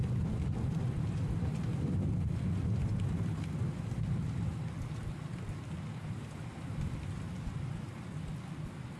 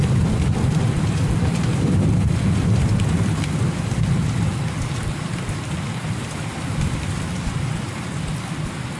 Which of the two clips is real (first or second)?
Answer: first